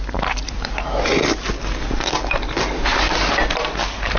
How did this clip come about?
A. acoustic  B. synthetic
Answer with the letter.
A